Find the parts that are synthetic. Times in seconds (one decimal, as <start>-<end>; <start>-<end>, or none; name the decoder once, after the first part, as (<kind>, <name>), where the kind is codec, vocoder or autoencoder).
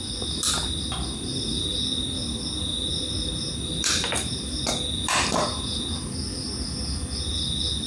1.3-1.8 (vocoder, BigVGAN v2)